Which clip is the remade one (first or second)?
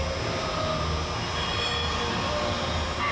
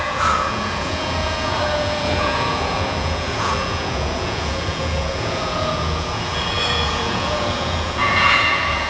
second